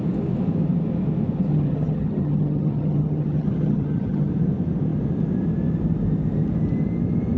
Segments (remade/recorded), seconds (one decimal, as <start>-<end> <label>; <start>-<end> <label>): 0.0-1.5 recorded; 1.5-4.3 remade; 4.3-7.4 recorded